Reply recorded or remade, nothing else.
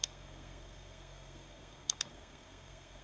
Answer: remade